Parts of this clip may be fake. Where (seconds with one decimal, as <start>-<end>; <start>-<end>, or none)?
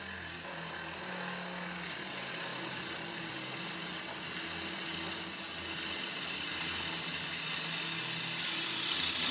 none